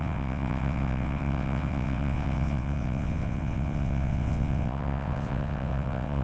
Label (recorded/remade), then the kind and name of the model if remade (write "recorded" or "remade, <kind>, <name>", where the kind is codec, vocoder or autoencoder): remade, vocoder, WaveNeXt